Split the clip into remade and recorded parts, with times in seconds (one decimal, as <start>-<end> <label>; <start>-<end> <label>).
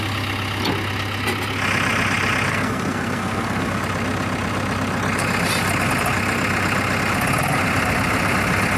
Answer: 0.0-2.5 recorded; 2.5-3.8 remade; 3.8-8.8 recorded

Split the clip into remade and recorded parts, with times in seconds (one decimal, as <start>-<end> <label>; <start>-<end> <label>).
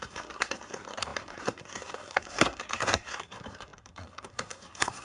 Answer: 0.0-5.0 remade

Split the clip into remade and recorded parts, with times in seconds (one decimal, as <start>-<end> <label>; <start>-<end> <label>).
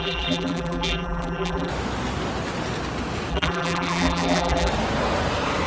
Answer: 0.0-1.7 remade; 1.7-3.3 recorded; 3.3-4.7 remade; 4.7-5.7 recorded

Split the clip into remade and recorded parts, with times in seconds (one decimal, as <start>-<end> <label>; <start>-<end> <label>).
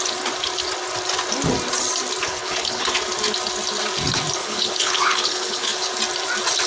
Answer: 0.0-2.3 recorded; 2.3-2.9 remade; 2.9-4.4 recorded; 4.4-5.9 remade; 5.9-6.7 recorded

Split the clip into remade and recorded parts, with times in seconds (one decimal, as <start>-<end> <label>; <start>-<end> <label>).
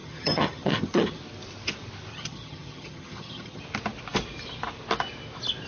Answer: 0.0-1.2 remade; 1.2-2.1 recorded; 2.1-3.6 remade; 3.6-5.7 recorded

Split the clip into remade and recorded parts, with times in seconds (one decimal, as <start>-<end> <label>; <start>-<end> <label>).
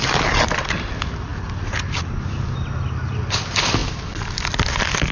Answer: 0.0-1.3 recorded; 1.3-2.0 remade; 2.0-3.8 recorded; 3.8-5.1 remade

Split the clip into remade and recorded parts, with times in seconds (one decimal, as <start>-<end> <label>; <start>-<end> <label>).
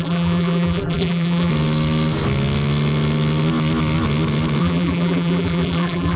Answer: 0.0-1.5 remade; 1.5-4.6 recorded; 4.6-6.2 remade